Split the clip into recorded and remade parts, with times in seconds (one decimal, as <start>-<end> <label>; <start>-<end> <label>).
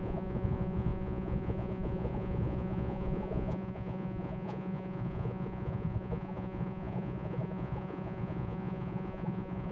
0.0-9.7 remade